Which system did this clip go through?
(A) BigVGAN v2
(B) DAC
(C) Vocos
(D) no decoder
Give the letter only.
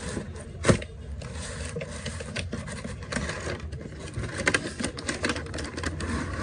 D